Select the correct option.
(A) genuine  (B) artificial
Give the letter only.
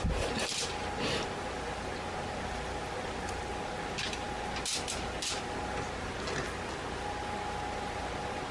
A